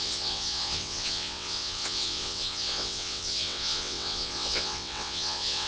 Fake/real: fake